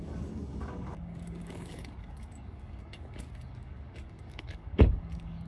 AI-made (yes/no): yes